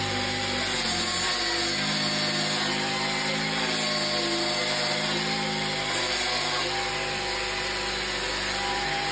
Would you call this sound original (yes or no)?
yes